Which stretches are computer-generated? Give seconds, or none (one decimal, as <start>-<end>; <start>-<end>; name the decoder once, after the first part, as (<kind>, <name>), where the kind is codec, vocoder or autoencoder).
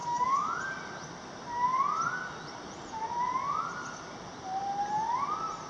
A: 0.0-0.6 (autoencoder, DAC-VAE)